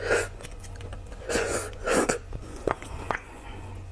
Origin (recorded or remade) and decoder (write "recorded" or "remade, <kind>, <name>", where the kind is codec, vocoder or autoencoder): remade, vocoder, Vocos